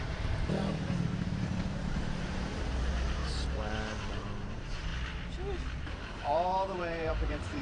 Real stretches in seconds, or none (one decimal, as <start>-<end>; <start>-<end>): 3.2-4.5; 4.9-5.8